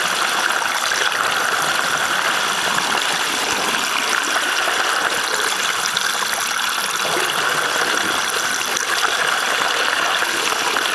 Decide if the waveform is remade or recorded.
recorded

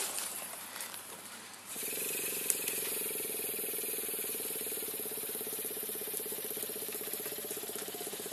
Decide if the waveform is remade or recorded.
remade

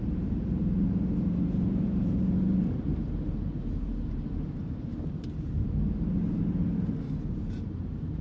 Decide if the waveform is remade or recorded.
remade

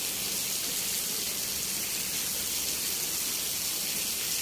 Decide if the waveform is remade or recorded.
recorded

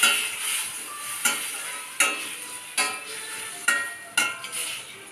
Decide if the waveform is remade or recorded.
recorded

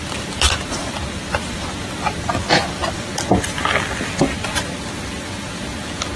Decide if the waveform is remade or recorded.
recorded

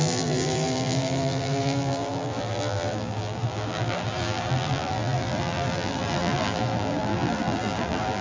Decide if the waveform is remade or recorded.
remade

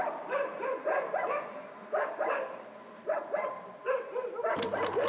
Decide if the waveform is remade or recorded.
remade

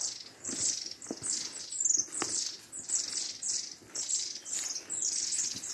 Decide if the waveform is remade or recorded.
recorded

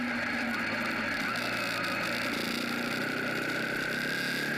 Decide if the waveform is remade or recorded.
recorded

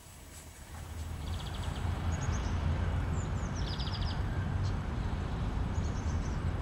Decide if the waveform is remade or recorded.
remade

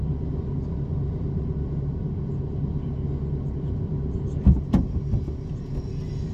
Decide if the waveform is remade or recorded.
recorded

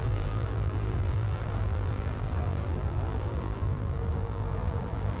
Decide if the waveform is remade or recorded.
remade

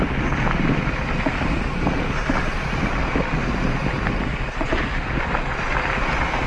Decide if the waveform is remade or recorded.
recorded